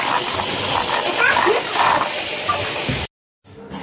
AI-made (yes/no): no